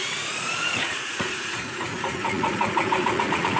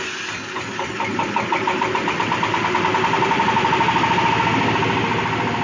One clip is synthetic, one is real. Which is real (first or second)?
second